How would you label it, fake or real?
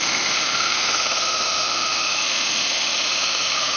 fake